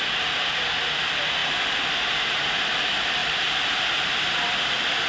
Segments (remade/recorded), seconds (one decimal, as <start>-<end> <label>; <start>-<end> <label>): 0.0-3.2 recorded; 3.2-3.9 remade; 3.9-5.1 recorded